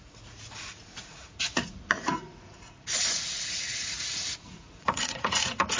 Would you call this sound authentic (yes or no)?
no